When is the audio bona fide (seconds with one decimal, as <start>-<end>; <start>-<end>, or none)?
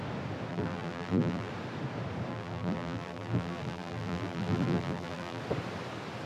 0.0-0.5; 1.5-2.3; 5.4-6.3